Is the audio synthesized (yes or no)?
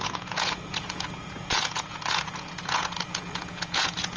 yes